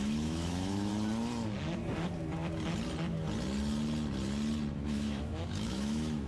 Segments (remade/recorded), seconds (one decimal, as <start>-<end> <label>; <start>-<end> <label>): 0.0-0.9 remade; 0.9-4.7 recorded; 4.7-6.3 remade